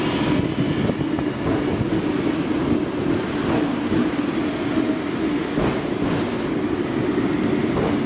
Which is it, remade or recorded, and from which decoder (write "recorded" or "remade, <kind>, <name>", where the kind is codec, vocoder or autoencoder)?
recorded